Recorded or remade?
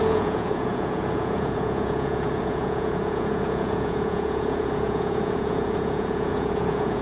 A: remade